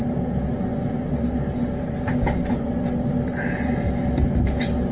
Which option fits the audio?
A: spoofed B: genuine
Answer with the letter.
B